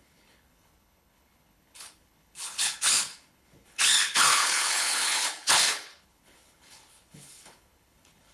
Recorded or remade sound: remade